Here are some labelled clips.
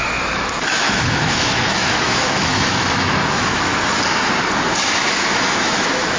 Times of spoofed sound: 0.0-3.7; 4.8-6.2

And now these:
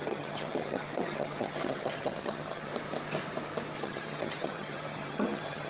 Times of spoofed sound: 0.0-2.7; 3.8-5.7

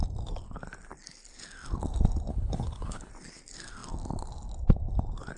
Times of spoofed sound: 2.3-3.1

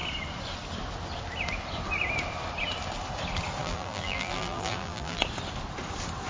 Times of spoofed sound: 3.6-5.2

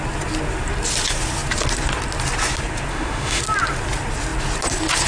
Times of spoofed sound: 2.9-3.4